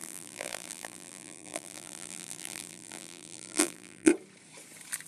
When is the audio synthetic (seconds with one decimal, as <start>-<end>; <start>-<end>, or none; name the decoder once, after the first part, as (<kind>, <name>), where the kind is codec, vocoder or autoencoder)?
0.0-4.1 (vocoder, BigVGAN v2)